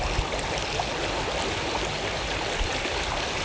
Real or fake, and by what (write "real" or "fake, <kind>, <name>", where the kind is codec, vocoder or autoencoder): real